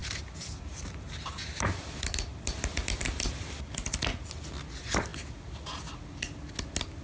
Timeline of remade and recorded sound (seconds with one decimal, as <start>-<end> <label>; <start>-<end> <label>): 0.0-7.0 recorded

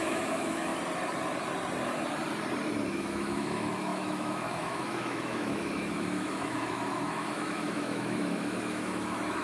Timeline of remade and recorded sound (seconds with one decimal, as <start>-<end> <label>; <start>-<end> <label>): 0.0-0.7 remade; 0.7-2.9 recorded; 2.9-9.4 remade

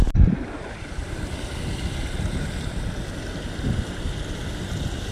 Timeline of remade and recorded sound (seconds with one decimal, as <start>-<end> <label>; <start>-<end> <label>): 0.0-2.0 remade; 2.0-5.1 recorded

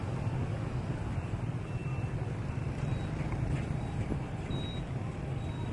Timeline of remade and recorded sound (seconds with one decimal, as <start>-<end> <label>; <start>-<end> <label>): 0.0-5.7 recorded